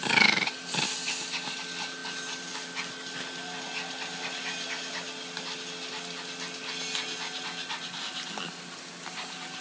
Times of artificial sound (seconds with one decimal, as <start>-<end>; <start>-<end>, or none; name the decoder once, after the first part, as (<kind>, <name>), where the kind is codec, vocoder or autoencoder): none

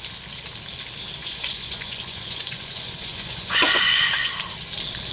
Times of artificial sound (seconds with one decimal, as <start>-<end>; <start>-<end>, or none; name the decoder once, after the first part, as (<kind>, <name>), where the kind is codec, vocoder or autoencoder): 1.2-4.3 (vocoder, Vocos)

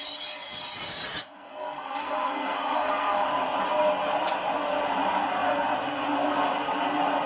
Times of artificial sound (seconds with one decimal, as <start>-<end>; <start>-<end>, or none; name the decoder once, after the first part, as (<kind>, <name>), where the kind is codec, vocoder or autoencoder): 1.2-3.3 (codec, SNAC)

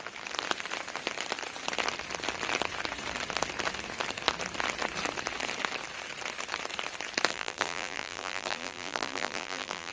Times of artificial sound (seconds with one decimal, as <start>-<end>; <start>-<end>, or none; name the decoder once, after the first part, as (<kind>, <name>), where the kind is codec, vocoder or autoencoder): 7.3-9.9 (vocoder, BigVGAN v2)